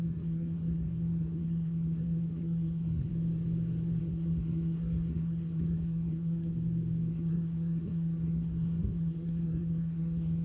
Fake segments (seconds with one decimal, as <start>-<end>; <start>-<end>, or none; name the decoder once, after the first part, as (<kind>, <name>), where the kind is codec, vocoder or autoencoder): 0.0-3.1 (codec, SNAC); 4.0-6.5; 7.1-10.4